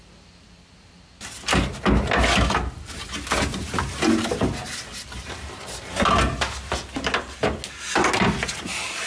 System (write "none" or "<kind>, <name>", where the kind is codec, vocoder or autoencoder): none